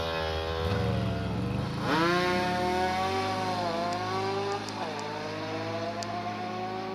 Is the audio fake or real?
real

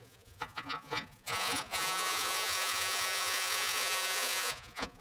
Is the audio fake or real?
fake